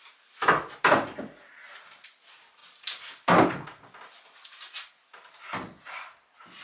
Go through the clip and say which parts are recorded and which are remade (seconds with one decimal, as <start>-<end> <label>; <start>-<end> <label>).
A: 0.0-6.6 recorded